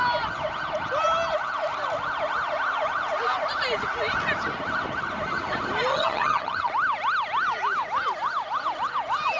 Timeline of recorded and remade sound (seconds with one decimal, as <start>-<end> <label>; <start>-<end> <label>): 0.0-5.9 recorded; 5.9-6.7 remade; 6.7-9.4 recorded